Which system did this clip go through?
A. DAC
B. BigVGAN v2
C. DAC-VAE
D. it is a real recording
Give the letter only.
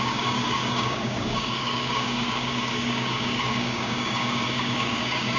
A